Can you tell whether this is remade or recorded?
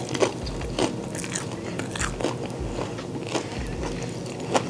recorded